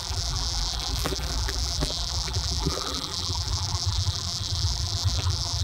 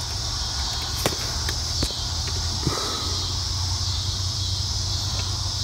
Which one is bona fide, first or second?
second